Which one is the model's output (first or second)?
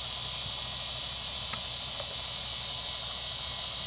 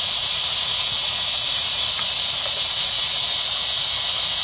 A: second